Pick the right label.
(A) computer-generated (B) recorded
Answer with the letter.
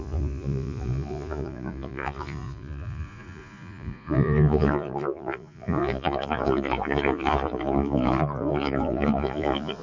A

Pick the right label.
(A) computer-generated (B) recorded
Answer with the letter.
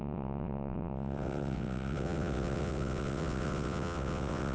A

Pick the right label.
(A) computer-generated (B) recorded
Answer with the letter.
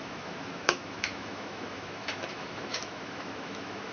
A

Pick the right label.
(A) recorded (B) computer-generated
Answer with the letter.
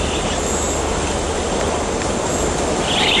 A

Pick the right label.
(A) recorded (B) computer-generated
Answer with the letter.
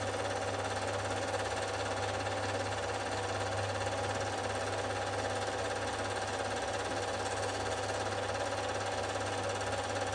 A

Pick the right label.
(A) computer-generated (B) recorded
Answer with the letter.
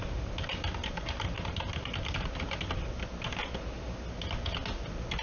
B